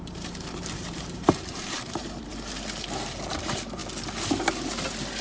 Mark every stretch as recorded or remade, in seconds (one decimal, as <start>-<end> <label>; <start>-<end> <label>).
0.0-2.3 remade; 2.3-3.3 recorded; 3.3-3.8 remade; 3.8-5.2 recorded